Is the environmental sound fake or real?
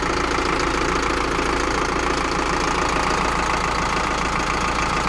real